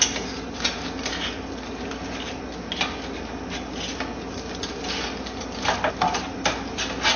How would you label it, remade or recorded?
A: recorded